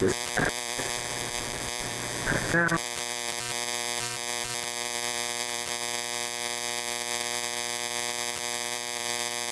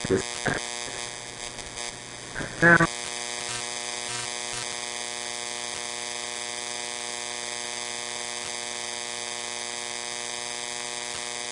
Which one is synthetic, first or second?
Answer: first